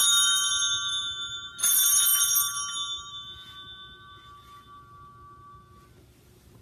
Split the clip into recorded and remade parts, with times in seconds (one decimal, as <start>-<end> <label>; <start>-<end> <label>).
0.0-6.6 recorded